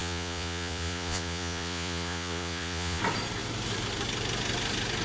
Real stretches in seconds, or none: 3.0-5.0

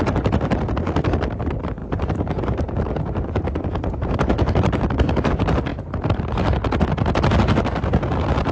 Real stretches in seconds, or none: 0.0-1.8; 5.3-8.5

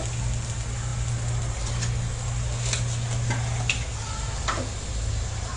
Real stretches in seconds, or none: 0.0-5.6

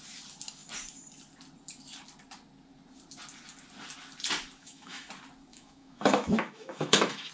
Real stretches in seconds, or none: 0.0-4.6; 5.1-5.5

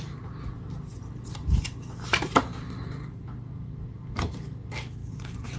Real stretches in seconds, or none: 0.0-5.0

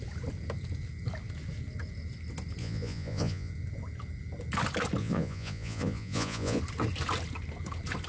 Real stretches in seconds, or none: 0.0-2.6; 3.5-5.0; 6.6-8.1